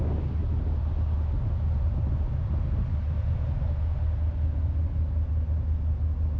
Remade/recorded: recorded